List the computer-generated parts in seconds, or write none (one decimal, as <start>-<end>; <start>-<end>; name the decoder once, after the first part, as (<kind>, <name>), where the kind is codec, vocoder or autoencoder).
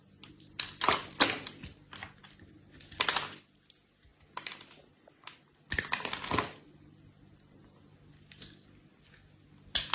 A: none